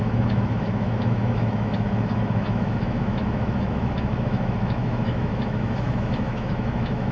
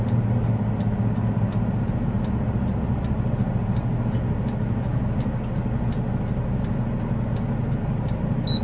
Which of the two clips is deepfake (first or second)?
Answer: first